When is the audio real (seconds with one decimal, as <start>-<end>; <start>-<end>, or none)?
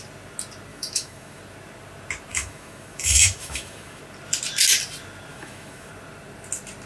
0.0-0.7; 1.4-2.3; 4.0-5.3; 5.9-6.9